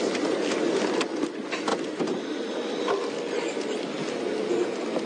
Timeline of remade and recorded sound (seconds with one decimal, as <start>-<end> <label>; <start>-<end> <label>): 0.0-5.1 recorded